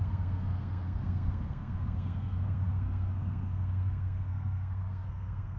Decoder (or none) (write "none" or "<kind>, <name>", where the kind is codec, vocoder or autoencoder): codec, SNAC